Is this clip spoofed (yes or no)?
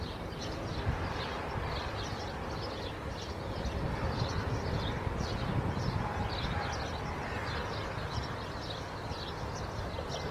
no